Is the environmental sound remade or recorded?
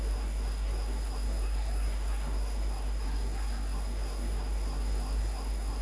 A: remade